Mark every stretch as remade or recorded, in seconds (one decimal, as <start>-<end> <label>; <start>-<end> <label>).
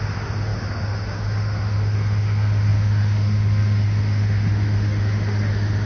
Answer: 0.0-5.9 remade